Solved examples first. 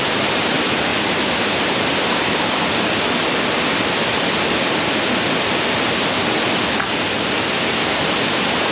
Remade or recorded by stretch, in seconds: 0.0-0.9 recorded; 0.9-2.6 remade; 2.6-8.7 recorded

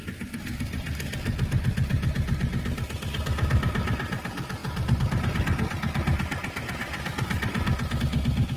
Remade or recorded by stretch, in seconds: 0.0-8.6 recorded

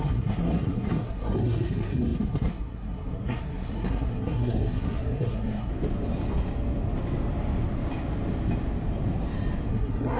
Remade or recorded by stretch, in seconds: 0.0-5.7 remade; 5.7-9.7 recorded; 9.7-10.2 remade

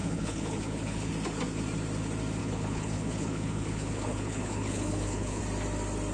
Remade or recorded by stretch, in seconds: 0.0-1.1 remade; 1.1-2.4 recorded; 2.4-5.4 remade; 5.4-6.1 recorded

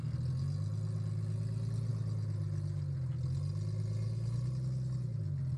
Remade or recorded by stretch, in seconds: 0.0-5.6 recorded

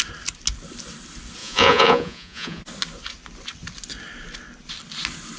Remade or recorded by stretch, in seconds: 0.0-1.4 recorded; 1.4-2.6 remade; 2.6-5.4 recorded

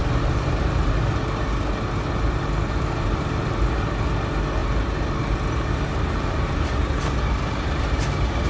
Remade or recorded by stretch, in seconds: 0.0-4.1 remade; 4.1-4.6 recorded; 4.6-8.1 remade; 8.1-8.5 recorded

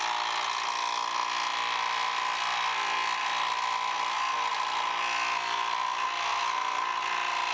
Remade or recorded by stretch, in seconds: 0.0-7.5 recorded